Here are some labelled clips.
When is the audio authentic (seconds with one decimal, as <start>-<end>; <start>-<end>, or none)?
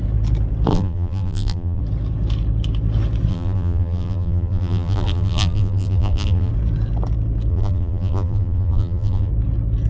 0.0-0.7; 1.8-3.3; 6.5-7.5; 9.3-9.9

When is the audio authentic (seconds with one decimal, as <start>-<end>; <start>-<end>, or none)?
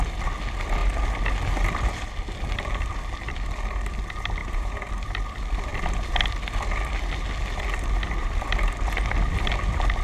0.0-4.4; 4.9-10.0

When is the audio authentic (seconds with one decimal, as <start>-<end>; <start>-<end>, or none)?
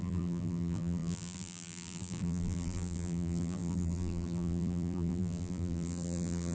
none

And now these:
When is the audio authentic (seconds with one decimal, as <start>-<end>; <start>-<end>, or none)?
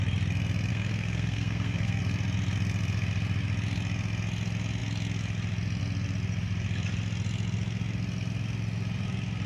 0.0-0.7; 2.0-9.5